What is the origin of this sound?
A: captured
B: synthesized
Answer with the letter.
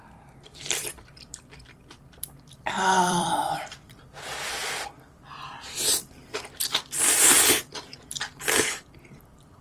B